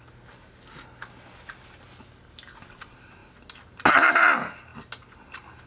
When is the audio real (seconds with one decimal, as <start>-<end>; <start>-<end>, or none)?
0.0-5.7